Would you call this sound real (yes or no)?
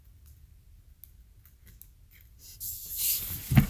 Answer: yes